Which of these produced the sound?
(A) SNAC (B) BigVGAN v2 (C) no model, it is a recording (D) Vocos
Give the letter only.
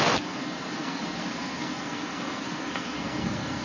A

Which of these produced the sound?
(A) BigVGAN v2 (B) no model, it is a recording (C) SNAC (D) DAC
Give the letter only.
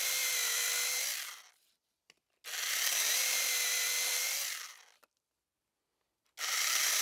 B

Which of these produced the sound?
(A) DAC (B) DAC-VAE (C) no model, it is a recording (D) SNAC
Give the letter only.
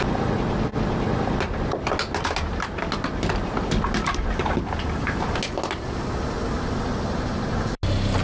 C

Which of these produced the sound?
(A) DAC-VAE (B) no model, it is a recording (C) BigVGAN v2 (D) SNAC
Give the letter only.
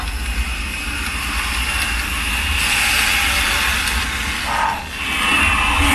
B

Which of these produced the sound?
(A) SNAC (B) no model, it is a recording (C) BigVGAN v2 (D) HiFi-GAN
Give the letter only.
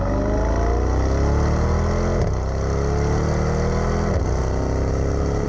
B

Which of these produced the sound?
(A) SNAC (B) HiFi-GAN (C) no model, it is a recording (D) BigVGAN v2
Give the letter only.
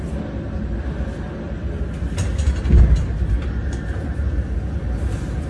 C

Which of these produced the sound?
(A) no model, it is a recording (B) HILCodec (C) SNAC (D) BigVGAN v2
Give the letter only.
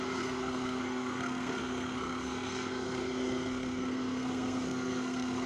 C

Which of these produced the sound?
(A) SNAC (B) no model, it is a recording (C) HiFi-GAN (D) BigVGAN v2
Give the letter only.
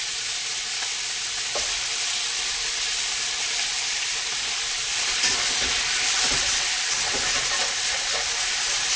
B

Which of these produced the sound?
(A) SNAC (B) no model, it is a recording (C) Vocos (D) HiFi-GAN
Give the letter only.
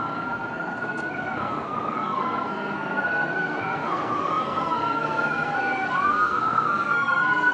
A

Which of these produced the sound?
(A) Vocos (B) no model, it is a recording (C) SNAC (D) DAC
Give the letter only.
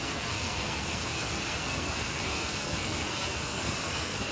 C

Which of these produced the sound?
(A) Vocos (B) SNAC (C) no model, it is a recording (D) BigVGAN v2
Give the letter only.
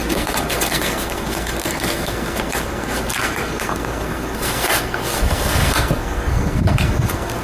B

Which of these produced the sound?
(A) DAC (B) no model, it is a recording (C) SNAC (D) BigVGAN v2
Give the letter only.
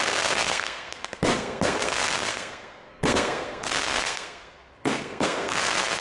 C